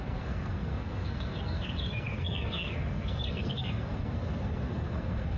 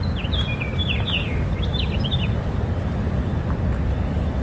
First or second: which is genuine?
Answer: second